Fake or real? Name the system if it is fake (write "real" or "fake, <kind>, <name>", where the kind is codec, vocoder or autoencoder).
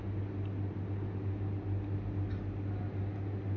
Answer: real